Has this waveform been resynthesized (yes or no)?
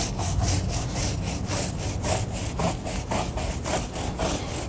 no